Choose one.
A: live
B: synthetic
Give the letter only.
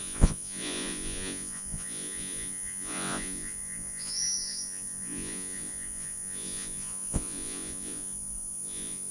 B